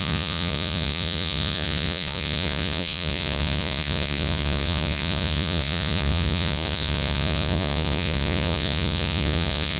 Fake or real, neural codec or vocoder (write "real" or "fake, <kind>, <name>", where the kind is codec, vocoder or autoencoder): fake, vocoder, Vocos